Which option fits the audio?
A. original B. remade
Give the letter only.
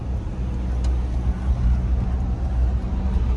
A